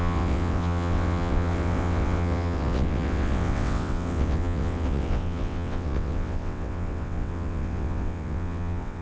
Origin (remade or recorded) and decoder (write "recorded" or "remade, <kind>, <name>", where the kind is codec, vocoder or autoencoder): remade, vocoder, WaveNeXt